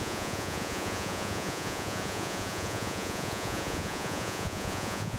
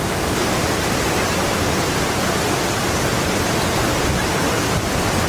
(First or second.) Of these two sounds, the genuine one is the second